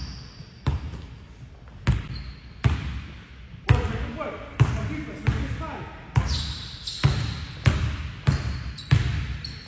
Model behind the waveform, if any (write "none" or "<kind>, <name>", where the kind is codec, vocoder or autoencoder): none